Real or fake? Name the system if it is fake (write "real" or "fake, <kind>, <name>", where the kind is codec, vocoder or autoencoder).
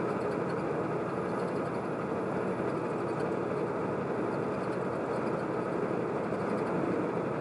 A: real